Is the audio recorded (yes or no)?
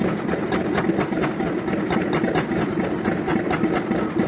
yes